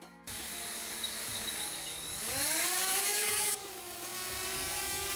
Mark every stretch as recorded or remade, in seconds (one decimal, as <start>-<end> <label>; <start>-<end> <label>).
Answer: 0.0-5.2 remade